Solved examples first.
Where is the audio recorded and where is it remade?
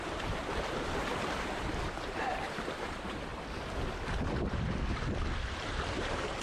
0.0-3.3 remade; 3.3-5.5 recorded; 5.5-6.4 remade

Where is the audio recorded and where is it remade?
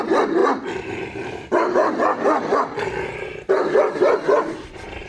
0.0-1.8 remade; 1.8-3.6 recorded; 3.6-5.1 remade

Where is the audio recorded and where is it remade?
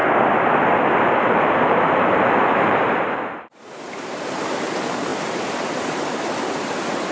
0.0-0.8 recorded; 0.8-7.1 remade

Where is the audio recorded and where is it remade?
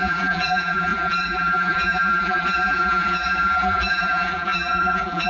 0.0-5.3 remade